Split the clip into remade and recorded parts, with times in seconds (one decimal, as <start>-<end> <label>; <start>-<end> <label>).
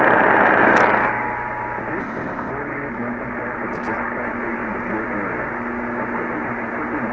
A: 0.0-2.0 recorded; 2.0-2.5 remade; 2.5-7.1 recorded